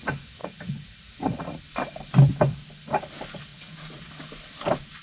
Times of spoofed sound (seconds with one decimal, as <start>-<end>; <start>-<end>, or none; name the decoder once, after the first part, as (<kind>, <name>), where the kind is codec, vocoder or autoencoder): 0.4-1.6 (vocoder, Vocos); 3.5-4.0